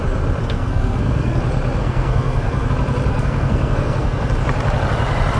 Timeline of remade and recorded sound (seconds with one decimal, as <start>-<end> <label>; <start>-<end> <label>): 0.0-0.4 recorded; 0.4-1.4 remade; 1.4-1.8 recorded; 1.8-2.7 remade; 2.7-3.1 recorded; 3.1-4.3 remade; 4.3-5.4 recorded